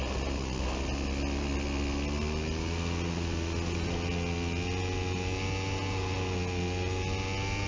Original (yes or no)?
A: yes